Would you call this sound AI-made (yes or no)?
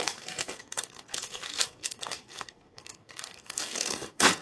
yes